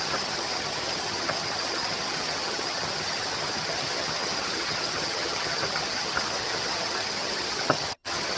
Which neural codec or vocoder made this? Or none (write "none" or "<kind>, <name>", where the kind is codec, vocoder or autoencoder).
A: vocoder, HiFi-GAN